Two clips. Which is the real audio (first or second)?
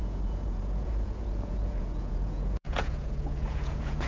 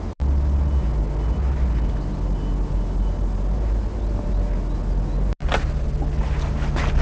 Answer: second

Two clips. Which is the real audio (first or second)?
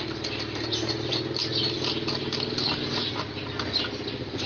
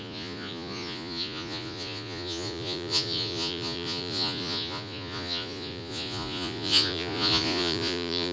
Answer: first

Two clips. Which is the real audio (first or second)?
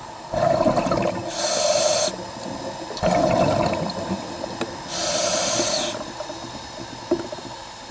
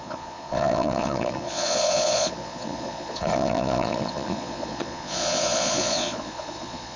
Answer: first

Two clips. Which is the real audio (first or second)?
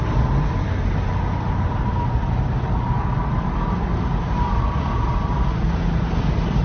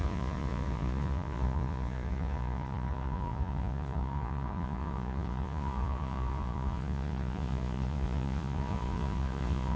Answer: first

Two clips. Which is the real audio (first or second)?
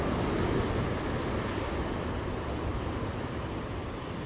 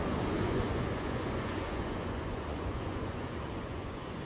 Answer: first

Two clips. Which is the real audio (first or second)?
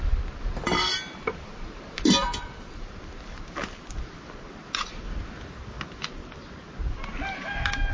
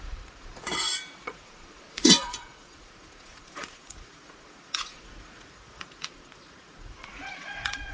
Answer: first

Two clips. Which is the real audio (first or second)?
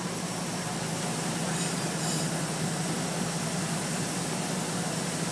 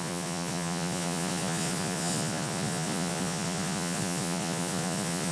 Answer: first